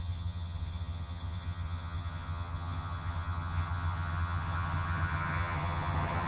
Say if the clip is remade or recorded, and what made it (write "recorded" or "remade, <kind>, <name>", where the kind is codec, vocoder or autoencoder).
remade, vocoder, HiFi-GAN